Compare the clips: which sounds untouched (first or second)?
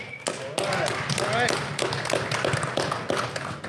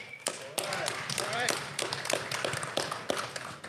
first